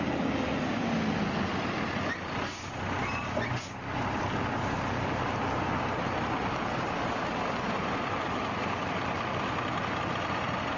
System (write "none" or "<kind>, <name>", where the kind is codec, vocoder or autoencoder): none